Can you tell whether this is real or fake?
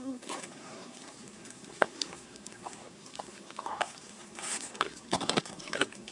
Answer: fake